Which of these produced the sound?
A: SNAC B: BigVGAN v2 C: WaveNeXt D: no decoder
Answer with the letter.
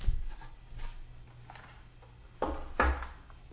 D